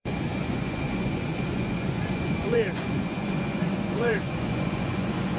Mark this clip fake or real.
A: fake